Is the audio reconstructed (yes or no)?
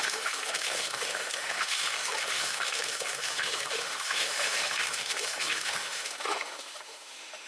yes